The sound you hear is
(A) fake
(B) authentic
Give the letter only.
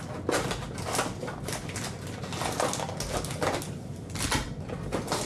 B